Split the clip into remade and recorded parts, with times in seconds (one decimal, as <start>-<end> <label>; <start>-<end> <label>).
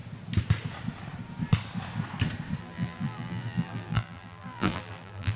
0.0-2.6 recorded; 2.6-5.4 remade